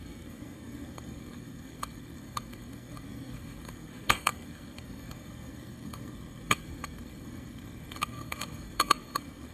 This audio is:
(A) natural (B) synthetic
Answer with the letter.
B